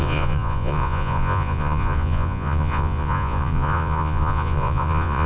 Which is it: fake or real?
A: fake